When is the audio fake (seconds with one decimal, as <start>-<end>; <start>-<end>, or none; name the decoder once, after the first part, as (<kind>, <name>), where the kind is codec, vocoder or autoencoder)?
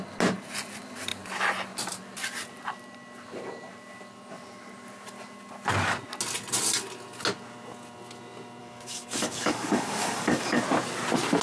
8.6-10.6 (codec, DAC)